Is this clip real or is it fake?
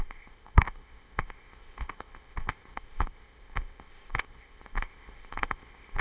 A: fake